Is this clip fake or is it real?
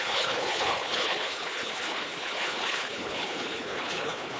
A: fake